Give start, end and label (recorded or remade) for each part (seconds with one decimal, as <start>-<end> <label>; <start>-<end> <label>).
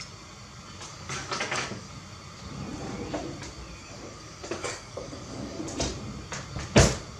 0.0-0.9 recorded; 0.9-1.9 remade; 1.9-3.8 recorded; 3.8-5.6 remade; 5.6-7.2 recorded